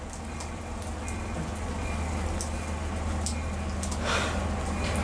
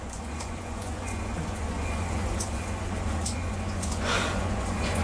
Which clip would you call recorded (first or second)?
first